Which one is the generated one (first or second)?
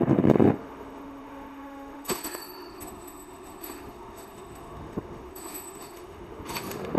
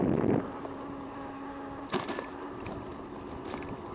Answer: first